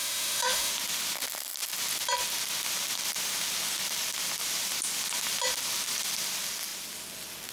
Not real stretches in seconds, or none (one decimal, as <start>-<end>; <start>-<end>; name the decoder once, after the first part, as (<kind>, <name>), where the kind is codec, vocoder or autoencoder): 0.0-0.7 (autoencoder, DAC-VAE)